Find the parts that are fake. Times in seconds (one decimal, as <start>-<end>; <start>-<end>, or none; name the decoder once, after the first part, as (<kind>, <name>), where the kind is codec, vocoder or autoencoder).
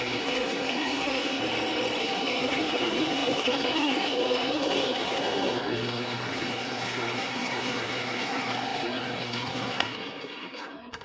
0.0-1.4 (codec, SNAC); 2.0-11.0